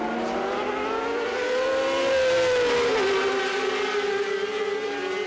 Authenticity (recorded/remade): recorded